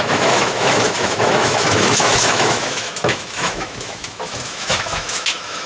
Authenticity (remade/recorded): remade